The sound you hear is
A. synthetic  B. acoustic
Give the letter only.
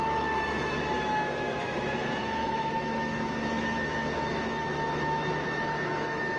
A